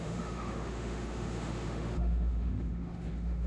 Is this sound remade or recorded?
remade